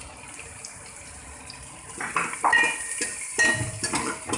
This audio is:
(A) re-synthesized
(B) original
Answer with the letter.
B